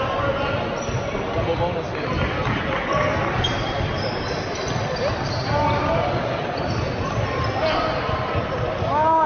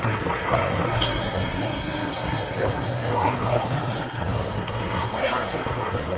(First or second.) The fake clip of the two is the second